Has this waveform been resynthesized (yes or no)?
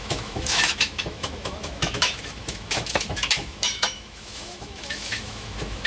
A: yes